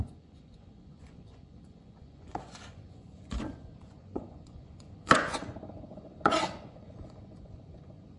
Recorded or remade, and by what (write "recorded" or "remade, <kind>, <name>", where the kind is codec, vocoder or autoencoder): remade, vocoder, Vocos